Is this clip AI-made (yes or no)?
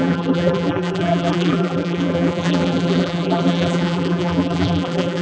yes